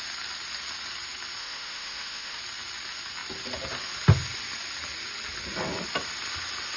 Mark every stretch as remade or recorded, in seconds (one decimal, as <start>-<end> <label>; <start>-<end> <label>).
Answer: 0.0-1.4 recorded; 1.4-2.4 remade; 2.4-6.8 recorded